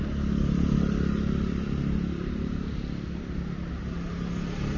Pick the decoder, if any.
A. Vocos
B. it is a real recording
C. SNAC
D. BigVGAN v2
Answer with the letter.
B